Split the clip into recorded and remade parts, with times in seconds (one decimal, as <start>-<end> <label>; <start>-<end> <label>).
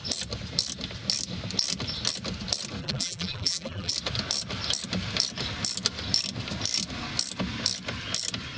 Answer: 0.0-2.8 recorded; 2.8-3.9 remade; 3.9-8.6 recorded